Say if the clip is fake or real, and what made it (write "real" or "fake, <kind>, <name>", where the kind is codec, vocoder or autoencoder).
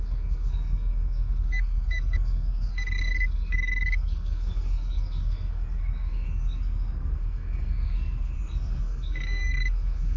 fake, codec, SNAC